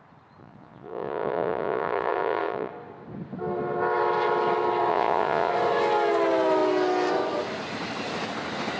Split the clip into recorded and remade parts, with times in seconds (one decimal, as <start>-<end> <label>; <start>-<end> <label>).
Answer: 0.0-0.4 recorded; 0.4-2.7 remade; 2.7-4.9 recorded; 4.9-5.5 remade; 5.5-8.8 recorded

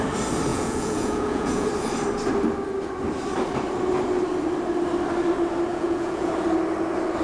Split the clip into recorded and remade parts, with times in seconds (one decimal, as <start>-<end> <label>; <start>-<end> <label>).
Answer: 0.0-0.5 recorded; 0.5-1.7 remade; 1.7-5.7 recorded; 5.7-6.3 remade; 6.3-7.2 recorded

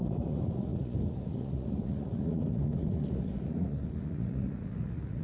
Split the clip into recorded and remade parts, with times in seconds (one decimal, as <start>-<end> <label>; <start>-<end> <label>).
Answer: 0.0-5.2 remade

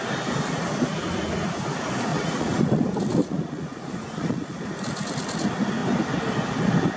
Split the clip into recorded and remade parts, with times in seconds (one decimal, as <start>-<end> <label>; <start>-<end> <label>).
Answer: 0.0-2.1 recorded; 2.1-2.8 remade; 2.8-3.2 recorded; 3.2-4.7 remade; 4.7-7.0 recorded

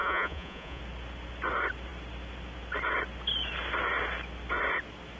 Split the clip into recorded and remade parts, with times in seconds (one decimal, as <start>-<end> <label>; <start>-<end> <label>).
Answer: 0.0-0.8 remade; 0.8-5.2 recorded

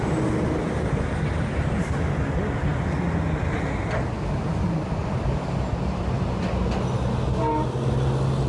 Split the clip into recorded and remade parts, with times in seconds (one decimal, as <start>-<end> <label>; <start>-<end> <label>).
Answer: 0.0-8.5 recorded

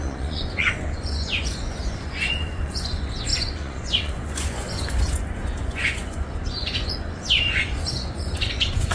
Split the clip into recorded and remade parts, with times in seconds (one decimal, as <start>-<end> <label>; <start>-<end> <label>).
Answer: 0.0-8.9 remade

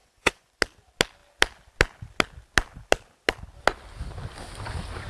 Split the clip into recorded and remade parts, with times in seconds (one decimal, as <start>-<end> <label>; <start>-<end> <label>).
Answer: 0.0-0.6 remade; 0.6-5.1 recorded